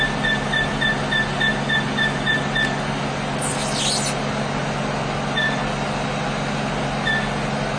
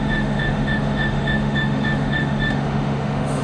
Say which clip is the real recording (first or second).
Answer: first